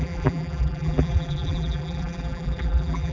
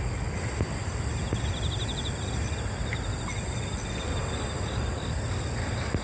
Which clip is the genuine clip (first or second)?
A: second